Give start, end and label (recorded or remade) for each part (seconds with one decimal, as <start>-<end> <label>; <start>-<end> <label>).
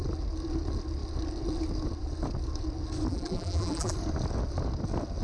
0.0-3.1 recorded; 3.1-3.9 remade; 3.9-5.2 recorded